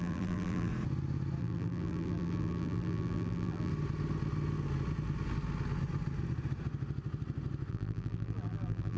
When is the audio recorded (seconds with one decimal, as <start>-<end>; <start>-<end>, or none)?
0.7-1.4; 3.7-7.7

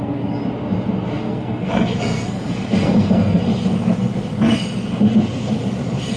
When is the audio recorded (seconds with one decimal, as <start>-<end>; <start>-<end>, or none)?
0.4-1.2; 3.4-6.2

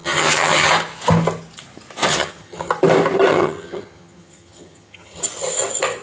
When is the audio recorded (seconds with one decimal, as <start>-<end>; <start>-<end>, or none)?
0.7-2.1; 2.7-3.3; 5.2-6.0